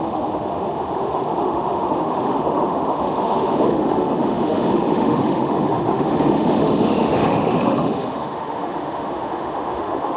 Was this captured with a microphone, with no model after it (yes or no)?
no